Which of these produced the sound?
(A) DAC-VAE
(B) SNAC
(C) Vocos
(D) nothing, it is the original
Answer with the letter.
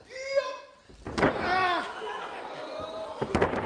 D